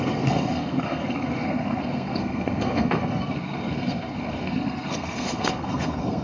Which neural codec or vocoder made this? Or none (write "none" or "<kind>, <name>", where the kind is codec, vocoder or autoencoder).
codec, SNAC